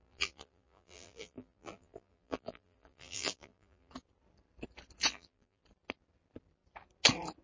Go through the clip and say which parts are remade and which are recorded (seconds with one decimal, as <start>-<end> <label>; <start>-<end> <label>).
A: 0.0-3.9 remade; 3.9-5.1 recorded; 5.1-5.6 remade; 5.6-7.4 recorded